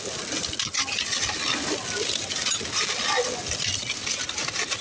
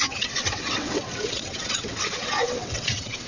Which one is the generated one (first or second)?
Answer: second